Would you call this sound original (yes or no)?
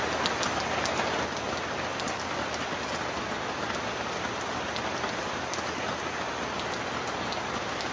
yes